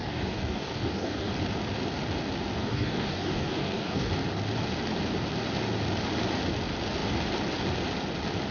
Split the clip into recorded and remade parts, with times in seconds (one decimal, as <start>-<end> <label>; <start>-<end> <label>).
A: 0.0-1.3 remade; 1.3-2.6 recorded; 2.6-4.1 remade; 4.1-8.5 recorded